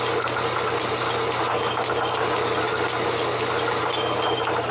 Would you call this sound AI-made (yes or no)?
no